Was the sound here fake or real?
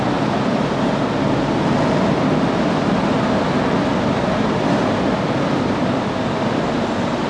real